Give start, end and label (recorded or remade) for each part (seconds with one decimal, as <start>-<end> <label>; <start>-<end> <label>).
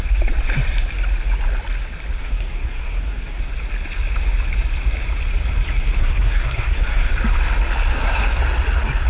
0.0-2.2 recorded; 2.2-3.4 remade; 3.4-6.0 recorded; 6.0-7.1 remade; 7.1-7.9 recorded; 7.9-8.4 remade; 8.4-9.1 recorded